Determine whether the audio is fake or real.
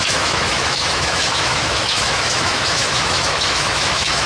fake